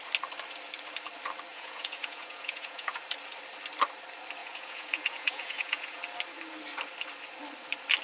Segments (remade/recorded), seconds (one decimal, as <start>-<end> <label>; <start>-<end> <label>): 0.0-1.5 recorded; 1.5-3.0 remade; 3.0-4.4 recorded; 4.4-6.0 remade; 6.0-8.0 recorded